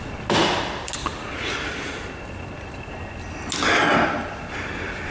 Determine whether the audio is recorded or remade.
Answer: recorded